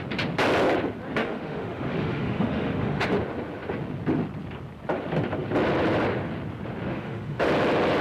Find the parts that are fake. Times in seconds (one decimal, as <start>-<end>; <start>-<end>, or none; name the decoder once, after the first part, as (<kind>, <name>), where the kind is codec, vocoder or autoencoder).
1.2-3.1 (autoencoder, DAC-VAE); 6.9-7.5